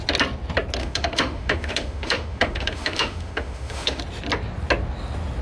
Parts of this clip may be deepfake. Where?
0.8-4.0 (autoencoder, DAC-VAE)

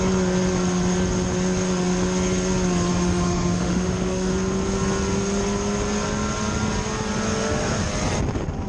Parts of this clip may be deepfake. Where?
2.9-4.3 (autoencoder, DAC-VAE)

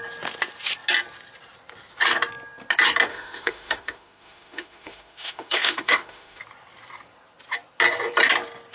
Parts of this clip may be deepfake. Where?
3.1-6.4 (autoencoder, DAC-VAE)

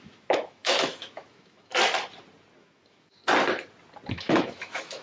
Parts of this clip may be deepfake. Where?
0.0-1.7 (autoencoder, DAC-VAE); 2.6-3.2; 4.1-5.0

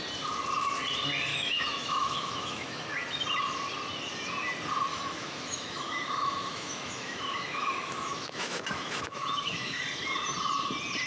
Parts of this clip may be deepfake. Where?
1.3-2.8 (autoencoder, DAC-VAE); 4.9-9.8

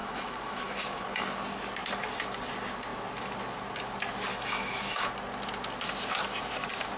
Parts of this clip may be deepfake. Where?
0.0-1.0 (autoencoder, DAC-VAE); 4.3-5.1

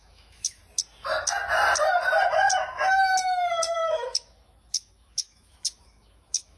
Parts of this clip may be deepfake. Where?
0.0-0.6 (autoencoder, DAC-VAE); 2.9-6.6

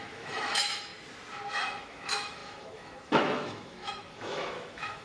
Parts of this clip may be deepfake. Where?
0.0-0.9 (autoencoder, DAC-VAE); 1.5-5.0